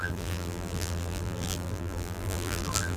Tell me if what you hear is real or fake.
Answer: fake